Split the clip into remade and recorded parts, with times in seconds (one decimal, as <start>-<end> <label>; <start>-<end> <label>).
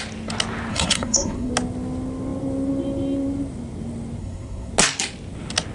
0.0-0.7 recorded; 0.7-1.5 remade; 1.5-4.2 recorded; 4.2-4.7 remade; 4.7-5.7 recorded